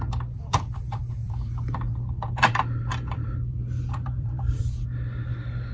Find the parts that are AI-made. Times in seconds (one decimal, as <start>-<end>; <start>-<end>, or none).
1.2-4.6